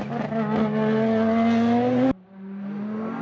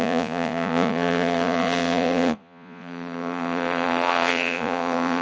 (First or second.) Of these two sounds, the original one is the first